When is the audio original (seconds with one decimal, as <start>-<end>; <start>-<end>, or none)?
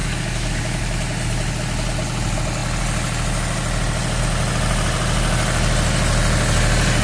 0.8-7.0